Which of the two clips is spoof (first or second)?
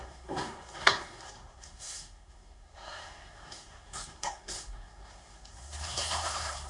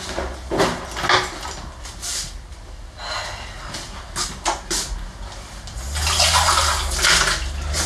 first